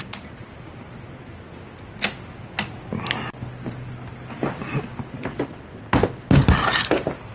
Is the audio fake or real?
real